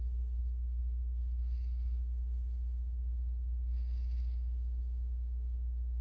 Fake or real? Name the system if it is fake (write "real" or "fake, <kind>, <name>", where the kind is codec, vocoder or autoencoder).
fake, codec, HILCodec